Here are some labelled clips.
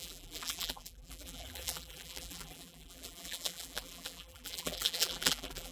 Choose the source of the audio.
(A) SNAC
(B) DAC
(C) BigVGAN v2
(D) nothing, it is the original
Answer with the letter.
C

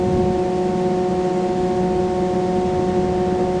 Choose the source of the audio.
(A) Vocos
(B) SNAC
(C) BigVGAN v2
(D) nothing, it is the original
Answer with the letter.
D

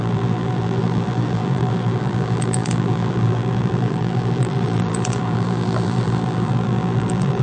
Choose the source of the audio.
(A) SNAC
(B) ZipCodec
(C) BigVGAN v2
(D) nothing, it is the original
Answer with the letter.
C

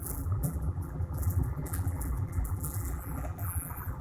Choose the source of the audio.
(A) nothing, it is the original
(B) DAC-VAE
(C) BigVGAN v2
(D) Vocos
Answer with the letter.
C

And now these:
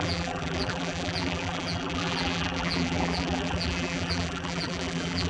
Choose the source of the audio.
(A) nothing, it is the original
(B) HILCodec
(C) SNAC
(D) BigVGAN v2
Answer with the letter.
D